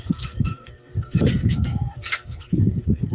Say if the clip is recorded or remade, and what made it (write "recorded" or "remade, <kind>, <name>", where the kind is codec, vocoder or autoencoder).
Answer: remade, codec, SNAC